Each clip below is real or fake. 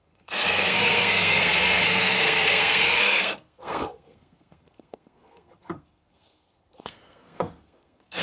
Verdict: fake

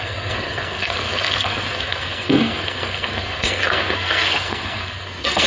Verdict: fake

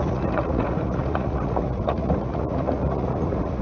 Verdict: fake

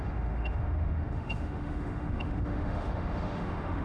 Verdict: fake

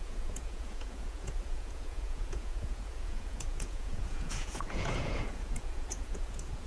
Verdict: fake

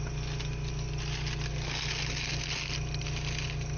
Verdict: real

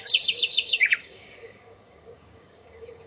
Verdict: fake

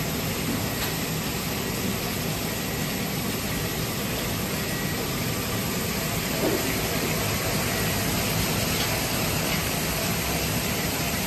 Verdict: real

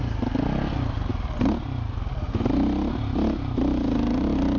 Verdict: real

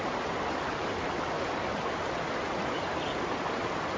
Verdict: real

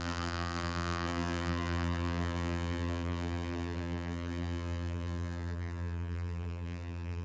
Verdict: fake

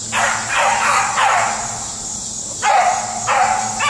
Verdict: real